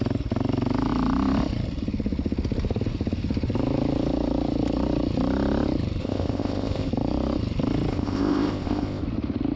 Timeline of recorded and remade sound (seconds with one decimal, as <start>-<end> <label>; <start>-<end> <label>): 0.0-6.0 recorded; 6.0-6.9 remade; 6.9-7.9 recorded; 7.9-9.0 remade; 9.0-9.6 recorded